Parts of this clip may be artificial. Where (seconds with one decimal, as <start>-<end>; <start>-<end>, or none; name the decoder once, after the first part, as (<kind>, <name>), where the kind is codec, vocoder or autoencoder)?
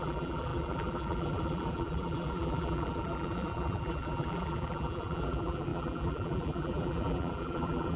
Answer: 0.0-8.0 (vocoder, BigVGAN v2)